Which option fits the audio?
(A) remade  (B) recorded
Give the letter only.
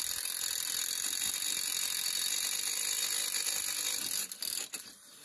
B